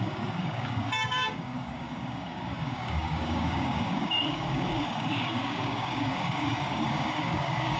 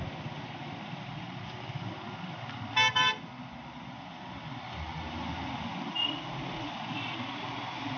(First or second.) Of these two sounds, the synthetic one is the first